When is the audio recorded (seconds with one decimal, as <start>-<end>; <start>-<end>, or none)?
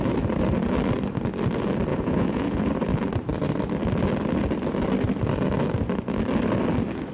0.0-1.9; 2.7-7.1